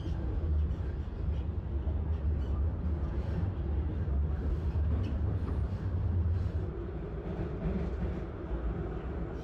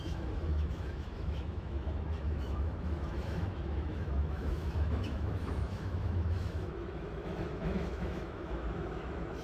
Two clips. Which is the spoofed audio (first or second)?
second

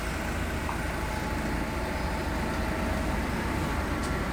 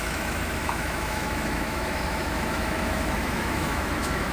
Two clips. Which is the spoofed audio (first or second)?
second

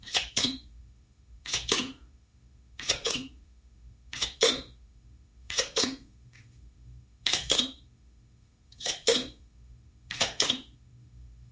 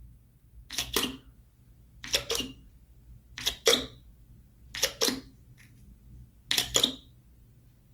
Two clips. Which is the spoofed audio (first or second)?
first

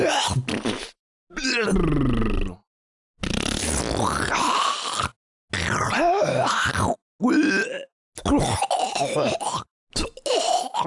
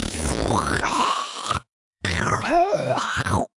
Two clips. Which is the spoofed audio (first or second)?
second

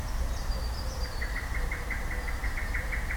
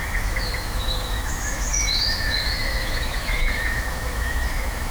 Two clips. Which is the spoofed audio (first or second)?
second